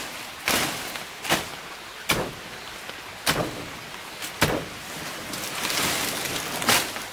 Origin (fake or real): real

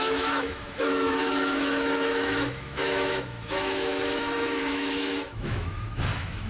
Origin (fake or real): fake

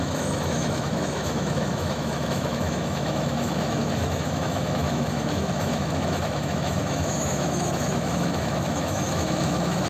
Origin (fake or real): fake